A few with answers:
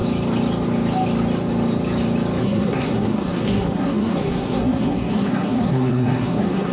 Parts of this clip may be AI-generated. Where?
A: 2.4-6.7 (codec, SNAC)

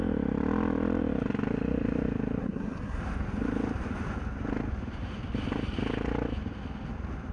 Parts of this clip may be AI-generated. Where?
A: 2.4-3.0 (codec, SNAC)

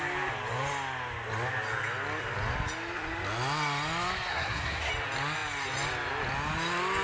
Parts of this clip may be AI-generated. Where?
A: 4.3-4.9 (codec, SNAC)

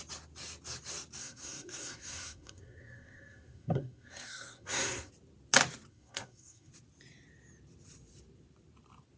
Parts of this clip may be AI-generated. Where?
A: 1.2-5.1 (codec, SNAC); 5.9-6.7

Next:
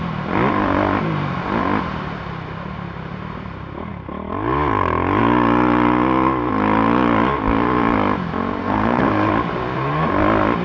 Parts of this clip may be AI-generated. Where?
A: 8.6-9.3 (codec, SNAC)

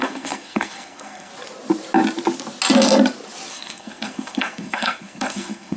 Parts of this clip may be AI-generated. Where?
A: 0.0-1.3 (codec, SNAC); 3.5-5.8

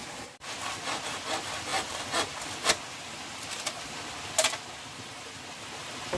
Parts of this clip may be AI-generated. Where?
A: none